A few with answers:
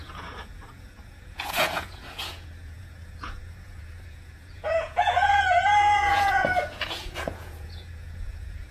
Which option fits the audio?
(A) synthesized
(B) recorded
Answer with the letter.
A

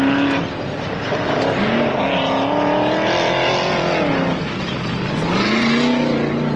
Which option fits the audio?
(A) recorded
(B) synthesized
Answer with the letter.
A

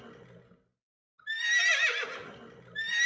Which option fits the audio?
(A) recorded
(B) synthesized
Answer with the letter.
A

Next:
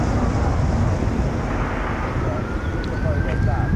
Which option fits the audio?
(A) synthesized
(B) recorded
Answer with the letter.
B